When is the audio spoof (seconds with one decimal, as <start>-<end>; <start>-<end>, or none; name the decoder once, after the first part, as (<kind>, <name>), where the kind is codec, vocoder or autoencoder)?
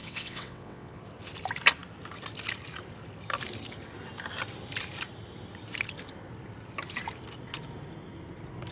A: 0.0-1.0 (vocoder, WaveNeXt)